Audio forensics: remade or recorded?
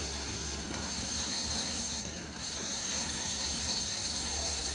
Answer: remade